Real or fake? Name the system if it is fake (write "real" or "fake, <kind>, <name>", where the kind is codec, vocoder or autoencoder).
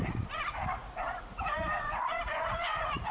fake, vocoder, Vocos